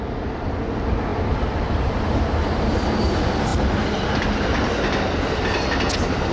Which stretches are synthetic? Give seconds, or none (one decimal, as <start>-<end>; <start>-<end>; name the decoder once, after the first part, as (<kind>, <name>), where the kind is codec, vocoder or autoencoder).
none